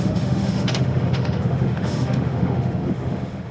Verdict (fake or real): fake